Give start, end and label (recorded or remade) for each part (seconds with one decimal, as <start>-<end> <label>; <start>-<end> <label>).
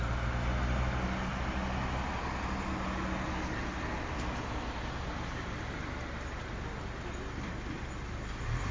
0.0-8.7 recorded